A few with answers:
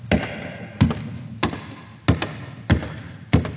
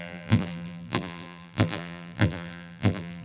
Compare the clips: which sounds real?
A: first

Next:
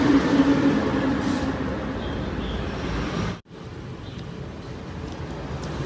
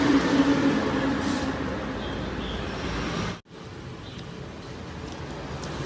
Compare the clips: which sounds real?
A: second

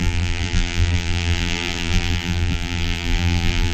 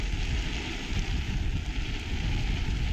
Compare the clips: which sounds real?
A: second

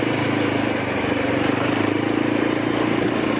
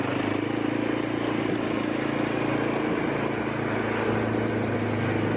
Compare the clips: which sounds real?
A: second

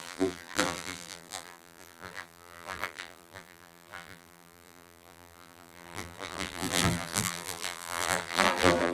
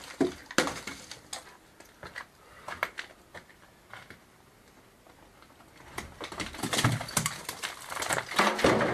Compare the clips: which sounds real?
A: second